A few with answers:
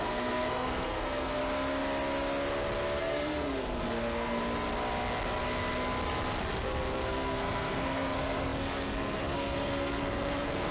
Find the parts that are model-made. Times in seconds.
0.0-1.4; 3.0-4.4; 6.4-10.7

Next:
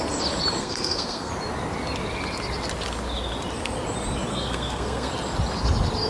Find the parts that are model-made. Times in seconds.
0.6-1.3; 4.3-5.1

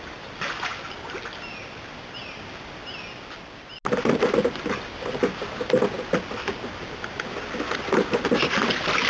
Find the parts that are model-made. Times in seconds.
none

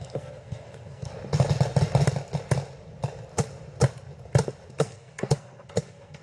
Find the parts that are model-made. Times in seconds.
0.0-1.1; 4.8-6.2